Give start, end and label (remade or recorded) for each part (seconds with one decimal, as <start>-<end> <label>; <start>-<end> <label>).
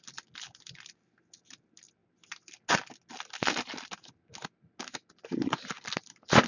0.0-6.5 recorded